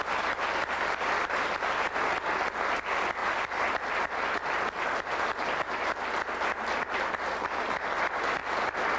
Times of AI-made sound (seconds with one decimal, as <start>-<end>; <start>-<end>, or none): 3.2-3.9; 8.4-9.0